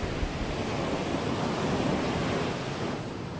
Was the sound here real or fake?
real